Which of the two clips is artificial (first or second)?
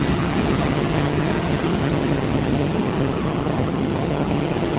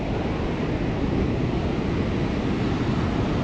first